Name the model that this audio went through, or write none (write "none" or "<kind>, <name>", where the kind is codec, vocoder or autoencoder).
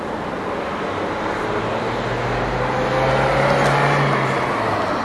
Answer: none